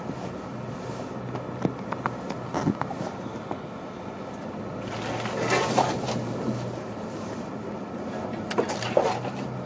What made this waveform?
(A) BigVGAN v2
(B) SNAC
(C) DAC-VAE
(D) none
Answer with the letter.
D